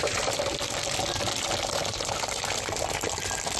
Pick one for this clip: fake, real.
real